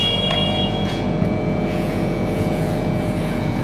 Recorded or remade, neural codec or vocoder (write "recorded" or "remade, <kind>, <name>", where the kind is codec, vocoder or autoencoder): remade, vocoder, Vocos